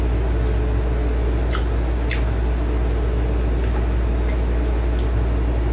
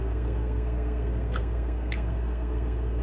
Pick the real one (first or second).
first